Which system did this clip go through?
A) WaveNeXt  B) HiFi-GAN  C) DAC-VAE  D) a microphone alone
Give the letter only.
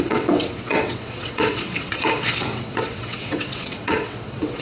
A